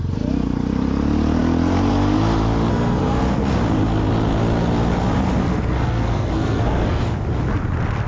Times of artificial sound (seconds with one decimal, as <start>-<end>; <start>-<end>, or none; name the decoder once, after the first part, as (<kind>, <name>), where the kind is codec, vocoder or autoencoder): 2.7-3.2 (codec, SNAC); 5.4-7.0